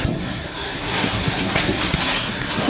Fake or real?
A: fake